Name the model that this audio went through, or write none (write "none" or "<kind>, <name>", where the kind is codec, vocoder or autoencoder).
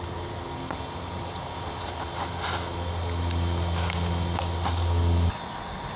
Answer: none